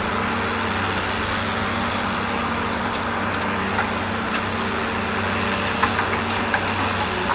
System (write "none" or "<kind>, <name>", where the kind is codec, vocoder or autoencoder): none